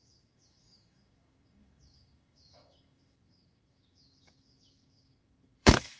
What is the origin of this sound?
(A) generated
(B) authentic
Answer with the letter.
A